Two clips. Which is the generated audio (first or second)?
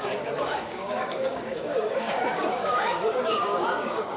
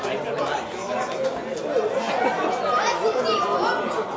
first